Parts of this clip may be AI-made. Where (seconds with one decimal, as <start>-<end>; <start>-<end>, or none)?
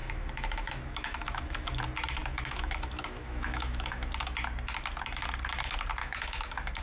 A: 0.0-1.8; 2.2-4.1; 6.0-6.8